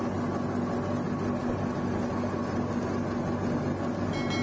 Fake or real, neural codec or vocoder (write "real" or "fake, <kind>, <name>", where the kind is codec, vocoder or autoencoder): real